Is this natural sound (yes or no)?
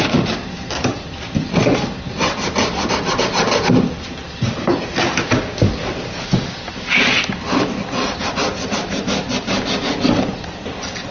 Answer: yes